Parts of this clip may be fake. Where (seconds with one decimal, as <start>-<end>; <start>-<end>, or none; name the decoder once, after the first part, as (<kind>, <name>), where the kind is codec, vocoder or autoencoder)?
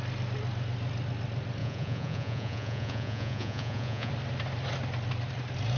1.6-4.1 (vocoder, Vocos)